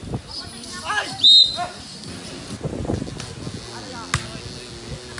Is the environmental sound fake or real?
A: real